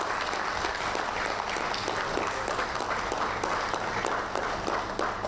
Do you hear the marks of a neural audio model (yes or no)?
no